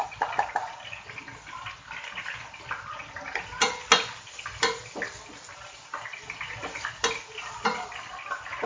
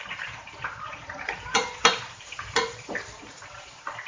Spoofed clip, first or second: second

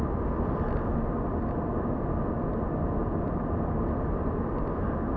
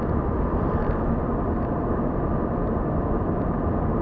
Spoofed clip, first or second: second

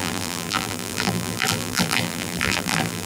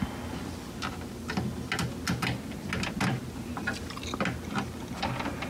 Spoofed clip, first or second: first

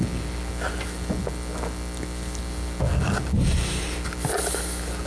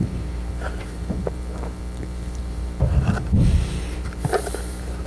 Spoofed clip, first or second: second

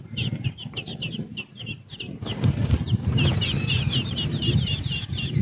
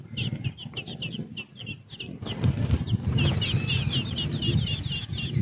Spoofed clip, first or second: first